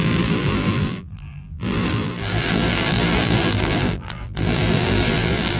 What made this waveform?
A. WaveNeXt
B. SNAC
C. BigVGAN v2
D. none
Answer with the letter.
C